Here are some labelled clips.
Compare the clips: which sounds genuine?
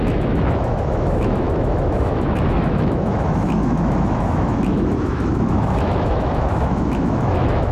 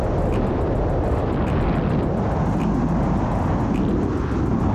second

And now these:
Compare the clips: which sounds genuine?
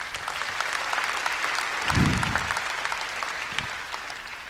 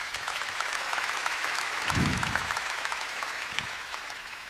first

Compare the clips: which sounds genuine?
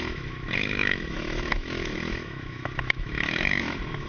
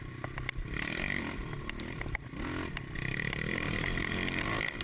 second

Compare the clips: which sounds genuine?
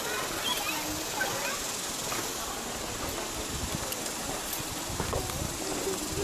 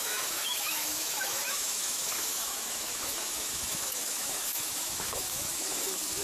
first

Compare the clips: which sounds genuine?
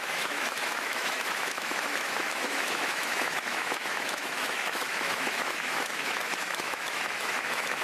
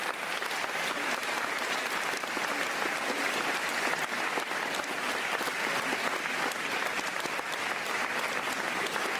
second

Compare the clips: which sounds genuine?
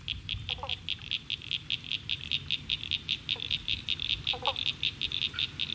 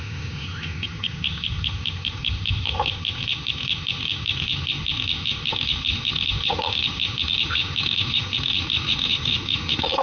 first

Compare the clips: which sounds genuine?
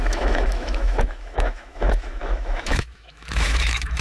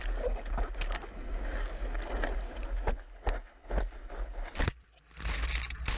second